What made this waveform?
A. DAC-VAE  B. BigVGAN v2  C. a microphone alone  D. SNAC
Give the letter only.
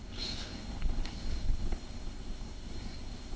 D